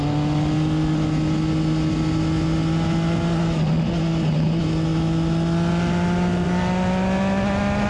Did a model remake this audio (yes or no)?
no